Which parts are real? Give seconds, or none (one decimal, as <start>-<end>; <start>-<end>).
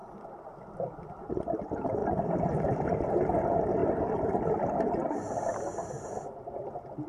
0.5-2.0; 2.6-7.1